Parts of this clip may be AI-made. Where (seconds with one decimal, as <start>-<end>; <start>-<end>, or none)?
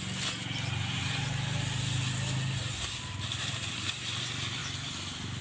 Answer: none